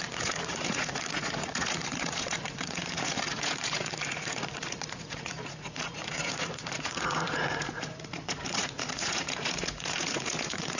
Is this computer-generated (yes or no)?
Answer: yes